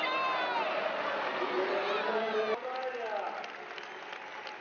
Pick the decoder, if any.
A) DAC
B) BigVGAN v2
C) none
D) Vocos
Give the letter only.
C